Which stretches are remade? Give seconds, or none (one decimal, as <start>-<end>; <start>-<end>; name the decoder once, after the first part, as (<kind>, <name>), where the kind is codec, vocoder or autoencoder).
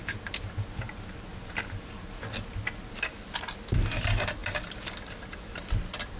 4.4-5.7 (vocoder, BigVGAN v2)